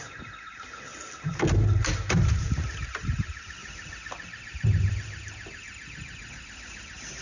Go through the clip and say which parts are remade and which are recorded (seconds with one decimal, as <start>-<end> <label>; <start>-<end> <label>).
0.0-7.2 recorded